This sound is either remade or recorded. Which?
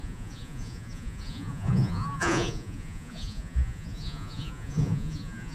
remade